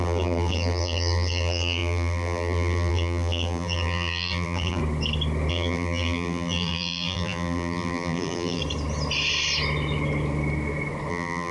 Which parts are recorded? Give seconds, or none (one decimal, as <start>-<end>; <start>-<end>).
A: 4.8-5.5; 8.6-11.1